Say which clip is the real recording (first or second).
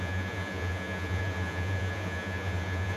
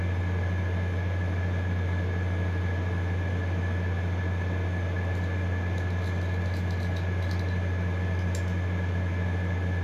second